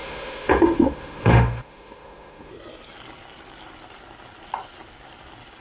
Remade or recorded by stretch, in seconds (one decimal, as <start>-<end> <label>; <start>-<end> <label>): 0.0-2.5 remade; 2.5-5.6 recorded